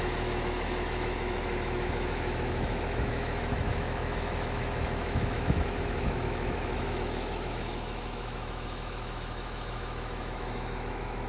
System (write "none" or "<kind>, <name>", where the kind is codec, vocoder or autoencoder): autoencoder, DAC-VAE